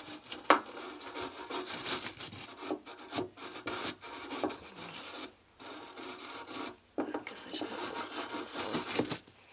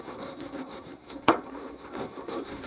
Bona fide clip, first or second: first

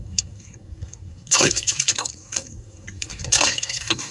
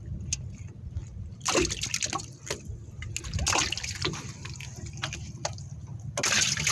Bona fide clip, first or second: second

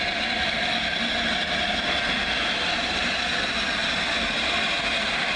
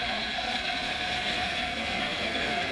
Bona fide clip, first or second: first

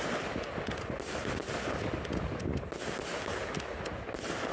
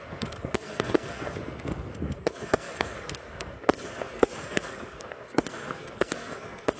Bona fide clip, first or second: first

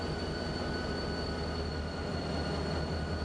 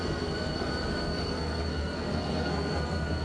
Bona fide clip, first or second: first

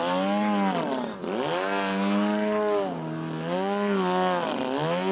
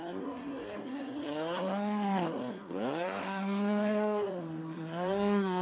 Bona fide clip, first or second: first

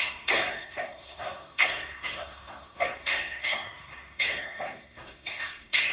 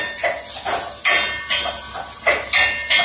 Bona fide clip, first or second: second